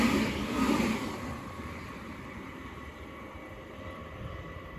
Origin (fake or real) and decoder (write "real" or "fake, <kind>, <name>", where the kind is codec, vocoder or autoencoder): fake, vocoder, BigVGAN v2